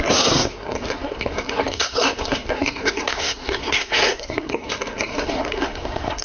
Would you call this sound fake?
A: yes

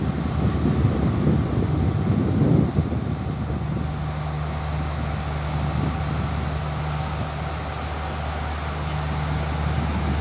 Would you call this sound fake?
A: no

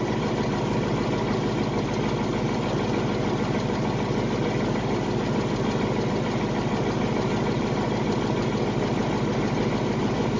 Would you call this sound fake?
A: no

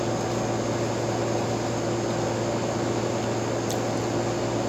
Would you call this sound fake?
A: no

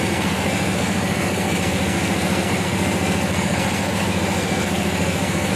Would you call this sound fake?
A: yes